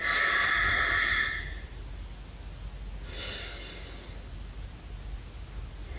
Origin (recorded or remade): recorded